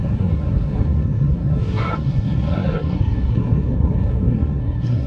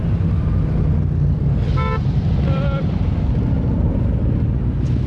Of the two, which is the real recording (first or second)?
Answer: second